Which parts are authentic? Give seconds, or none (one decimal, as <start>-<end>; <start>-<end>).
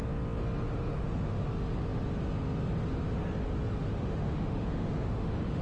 0.0-0.6; 1.5-3.8